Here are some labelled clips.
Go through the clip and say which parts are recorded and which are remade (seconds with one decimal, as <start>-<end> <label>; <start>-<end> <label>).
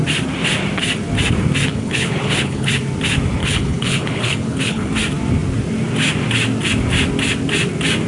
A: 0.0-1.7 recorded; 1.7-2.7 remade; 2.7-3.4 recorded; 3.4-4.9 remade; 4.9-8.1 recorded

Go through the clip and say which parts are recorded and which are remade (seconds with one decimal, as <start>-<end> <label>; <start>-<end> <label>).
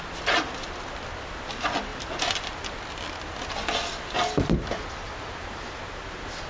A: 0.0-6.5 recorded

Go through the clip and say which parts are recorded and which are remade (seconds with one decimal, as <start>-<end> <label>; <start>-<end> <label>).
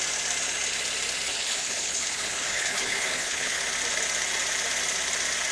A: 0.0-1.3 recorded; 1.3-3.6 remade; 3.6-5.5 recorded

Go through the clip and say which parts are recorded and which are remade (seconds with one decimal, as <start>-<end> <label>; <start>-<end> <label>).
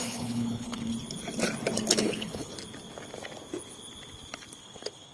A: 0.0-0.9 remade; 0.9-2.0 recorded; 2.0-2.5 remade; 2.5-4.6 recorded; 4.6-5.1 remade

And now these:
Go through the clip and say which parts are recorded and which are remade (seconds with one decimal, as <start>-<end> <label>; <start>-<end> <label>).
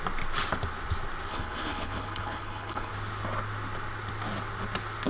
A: 0.0-1.3 recorded; 1.3-2.9 remade; 2.9-5.1 recorded